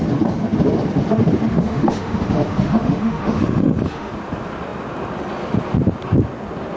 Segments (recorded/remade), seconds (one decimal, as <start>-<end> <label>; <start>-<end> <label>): 0.0-1.5 recorded; 1.5-4.1 remade; 4.1-6.8 recorded